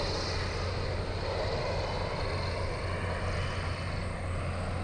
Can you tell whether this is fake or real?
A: real